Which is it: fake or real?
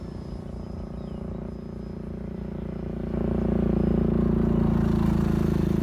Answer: real